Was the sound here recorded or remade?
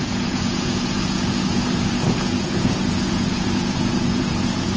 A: remade